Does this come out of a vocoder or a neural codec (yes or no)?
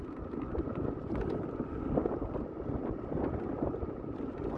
no